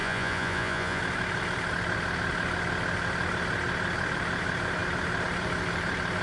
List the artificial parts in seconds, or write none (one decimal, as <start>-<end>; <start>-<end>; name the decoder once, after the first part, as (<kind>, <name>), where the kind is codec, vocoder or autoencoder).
0.0-1.0 (vocoder, Vocos)